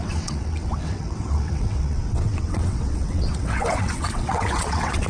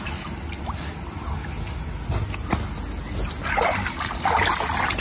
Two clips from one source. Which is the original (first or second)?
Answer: second